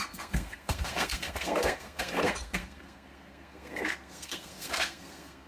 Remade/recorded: remade